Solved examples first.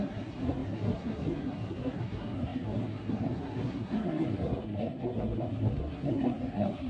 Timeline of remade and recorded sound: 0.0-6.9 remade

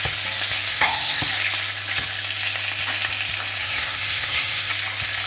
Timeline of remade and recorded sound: 0.0-0.7 recorded; 0.7-1.2 remade; 1.2-3.6 recorded; 3.6-4.7 remade; 4.7-5.3 recorded

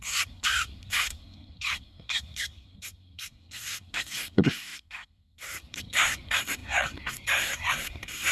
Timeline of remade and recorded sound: 0.0-8.3 remade

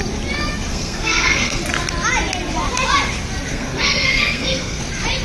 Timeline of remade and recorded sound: 0.0-0.7 recorded; 0.7-1.6 remade; 1.6-3.5 recorded; 3.5-4.8 remade; 4.8-5.2 recorded